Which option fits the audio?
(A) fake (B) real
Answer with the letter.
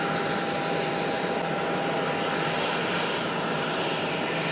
B